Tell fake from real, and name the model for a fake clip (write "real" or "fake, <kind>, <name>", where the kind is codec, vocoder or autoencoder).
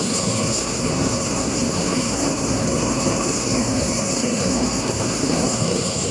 fake, codec, SNAC